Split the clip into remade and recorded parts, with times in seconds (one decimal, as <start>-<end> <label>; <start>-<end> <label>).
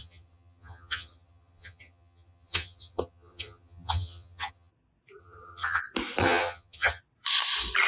0.0-4.7 remade; 4.7-5.2 recorded; 5.2-5.8 remade; 5.8-6.2 recorded; 6.2-7.0 remade; 7.0-7.9 recorded